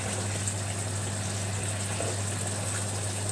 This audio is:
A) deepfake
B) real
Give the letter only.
B